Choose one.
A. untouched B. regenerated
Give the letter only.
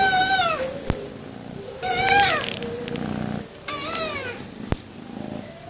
A